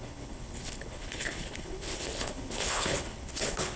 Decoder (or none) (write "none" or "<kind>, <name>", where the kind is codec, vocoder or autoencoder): codec, HILCodec